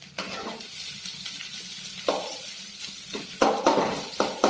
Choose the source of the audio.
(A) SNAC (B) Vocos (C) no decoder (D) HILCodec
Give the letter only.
C